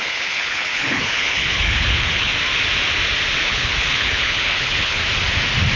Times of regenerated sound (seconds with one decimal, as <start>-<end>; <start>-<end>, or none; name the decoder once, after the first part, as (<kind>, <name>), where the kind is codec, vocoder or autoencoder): 0.0-2.3 (codec, HILCodec); 3.4-5.0